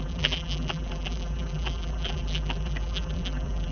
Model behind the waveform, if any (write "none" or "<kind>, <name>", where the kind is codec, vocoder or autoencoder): vocoder, BigVGAN v2